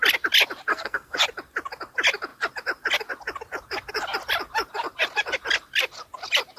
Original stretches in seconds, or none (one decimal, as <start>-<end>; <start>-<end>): 0.0-0.7; 1.2-6.6